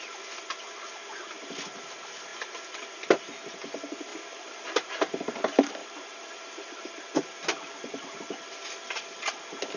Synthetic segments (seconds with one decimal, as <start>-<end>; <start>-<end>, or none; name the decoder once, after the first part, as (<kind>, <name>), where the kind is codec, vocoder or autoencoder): 2.3-3.5 (vocoder, BigVGAN v2); 4.1-4.7; 5.8-8.2